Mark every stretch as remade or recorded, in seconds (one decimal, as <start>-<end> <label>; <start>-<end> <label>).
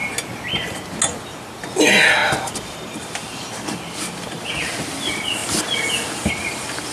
0.0-1.2 recorded; 1.2-2.2 remade; 2.2-3.0 recorded; 3.0-6.9 remade